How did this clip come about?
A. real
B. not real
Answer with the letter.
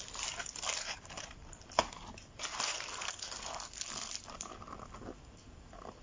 A